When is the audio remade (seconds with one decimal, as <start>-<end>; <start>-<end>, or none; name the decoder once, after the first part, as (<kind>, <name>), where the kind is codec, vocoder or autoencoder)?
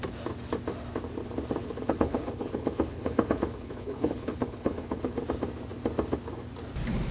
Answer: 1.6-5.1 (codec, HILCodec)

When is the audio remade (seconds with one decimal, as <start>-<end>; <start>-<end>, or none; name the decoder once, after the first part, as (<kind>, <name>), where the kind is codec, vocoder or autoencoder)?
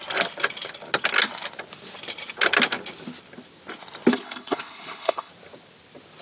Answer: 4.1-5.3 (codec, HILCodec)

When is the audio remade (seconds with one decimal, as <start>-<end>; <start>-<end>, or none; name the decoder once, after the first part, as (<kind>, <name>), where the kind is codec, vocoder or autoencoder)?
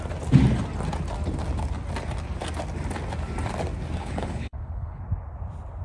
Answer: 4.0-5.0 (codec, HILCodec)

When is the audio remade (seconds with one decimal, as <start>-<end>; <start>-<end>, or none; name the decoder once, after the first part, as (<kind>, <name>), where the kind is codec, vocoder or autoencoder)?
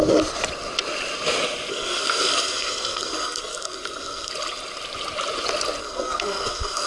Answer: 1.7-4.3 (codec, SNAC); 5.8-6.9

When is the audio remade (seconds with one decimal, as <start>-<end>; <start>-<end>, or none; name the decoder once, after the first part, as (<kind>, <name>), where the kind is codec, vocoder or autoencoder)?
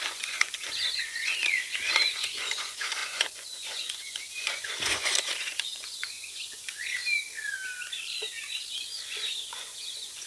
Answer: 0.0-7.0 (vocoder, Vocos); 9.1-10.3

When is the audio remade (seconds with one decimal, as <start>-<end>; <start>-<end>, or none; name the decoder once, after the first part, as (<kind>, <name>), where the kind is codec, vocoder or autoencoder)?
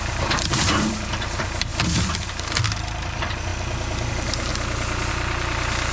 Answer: 0.0-1.7 (vocoder, BigVGAN v2); 2.3-3.5; 4.1-4.5; 5.1-5.9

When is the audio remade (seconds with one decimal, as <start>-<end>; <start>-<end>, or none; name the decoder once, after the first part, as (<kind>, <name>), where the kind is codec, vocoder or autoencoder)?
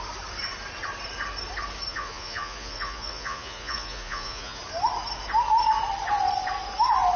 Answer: 1.9-4.6 (vocoder, Vocos)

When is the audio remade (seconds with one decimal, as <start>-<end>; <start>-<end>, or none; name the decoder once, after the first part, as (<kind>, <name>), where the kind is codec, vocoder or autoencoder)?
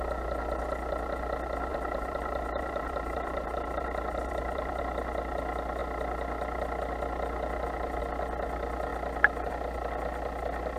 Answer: 1.7-4.8 (vocoder, BigVGAN v2)